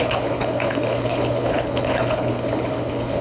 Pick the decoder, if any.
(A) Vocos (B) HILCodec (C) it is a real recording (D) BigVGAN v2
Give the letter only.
B